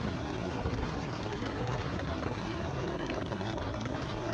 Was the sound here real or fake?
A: fake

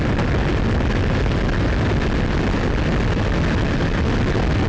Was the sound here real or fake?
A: real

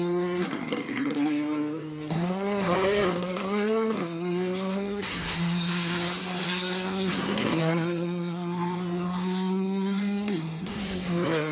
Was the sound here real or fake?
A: fake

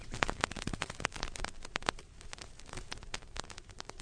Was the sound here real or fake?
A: fake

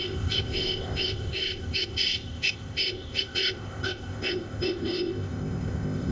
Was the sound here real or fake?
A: fake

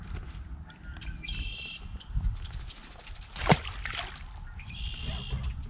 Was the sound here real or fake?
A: real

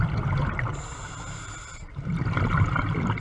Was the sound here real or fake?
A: real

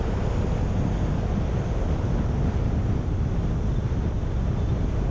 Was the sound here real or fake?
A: real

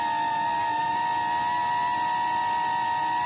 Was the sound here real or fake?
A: real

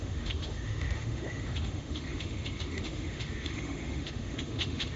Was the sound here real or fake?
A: fake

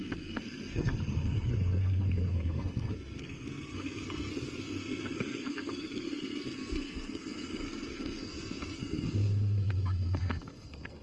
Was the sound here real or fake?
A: fake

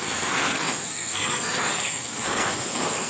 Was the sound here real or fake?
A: fake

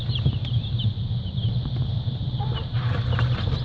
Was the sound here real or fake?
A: real